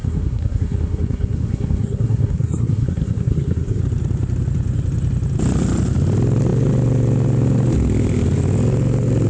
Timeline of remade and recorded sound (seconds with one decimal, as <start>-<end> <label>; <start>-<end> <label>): 0.0-3.8 remade; 3.8-9.3 recorded